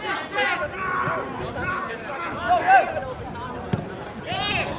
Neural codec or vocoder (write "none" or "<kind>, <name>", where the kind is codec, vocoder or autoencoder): none